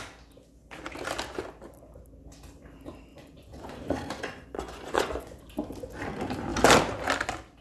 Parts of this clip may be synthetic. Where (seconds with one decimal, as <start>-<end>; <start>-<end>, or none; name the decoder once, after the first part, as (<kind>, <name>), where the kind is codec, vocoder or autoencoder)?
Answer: 3.1-5.4 (vocoder, Vocos)